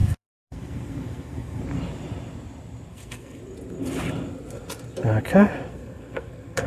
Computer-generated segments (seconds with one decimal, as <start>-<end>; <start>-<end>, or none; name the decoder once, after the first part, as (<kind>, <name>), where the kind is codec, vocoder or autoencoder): 0.0-1.6 (codec, SNAC); 2.9-3.4; 5.7-6.7